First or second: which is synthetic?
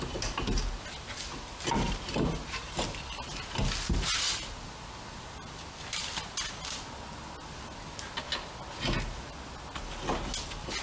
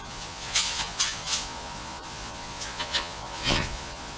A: second